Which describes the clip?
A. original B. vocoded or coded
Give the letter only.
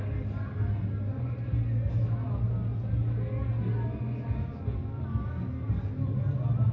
A